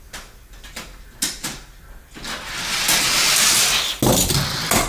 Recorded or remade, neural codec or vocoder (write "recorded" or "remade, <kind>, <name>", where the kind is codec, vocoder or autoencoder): recorded